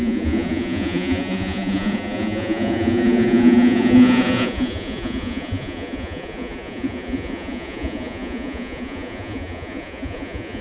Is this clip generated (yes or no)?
yes